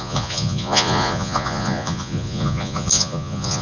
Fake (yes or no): yes